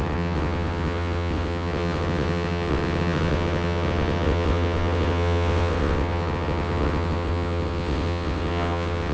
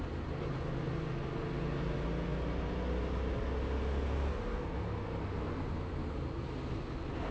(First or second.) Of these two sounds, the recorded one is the second